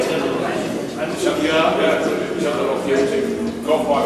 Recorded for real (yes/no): yes